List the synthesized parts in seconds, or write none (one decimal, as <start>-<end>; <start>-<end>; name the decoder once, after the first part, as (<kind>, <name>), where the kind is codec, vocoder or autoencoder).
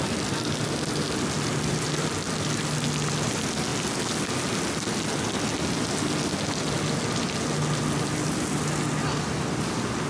none